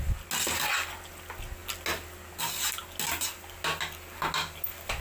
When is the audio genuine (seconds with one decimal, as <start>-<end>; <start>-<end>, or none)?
0.0-5.0